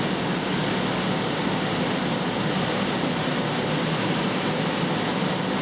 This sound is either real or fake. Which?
real